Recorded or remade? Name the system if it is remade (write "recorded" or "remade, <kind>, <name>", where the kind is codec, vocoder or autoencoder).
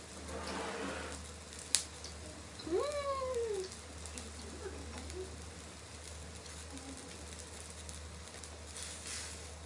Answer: recorded